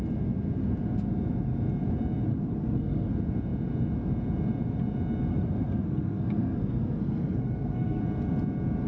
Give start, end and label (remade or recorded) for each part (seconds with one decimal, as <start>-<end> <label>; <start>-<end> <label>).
0.0-2.3 recorded; 2.3-3.1 remade; 3.1-5.3 recorded; 5.3-8.0 remade; 8.0-8.9 recorded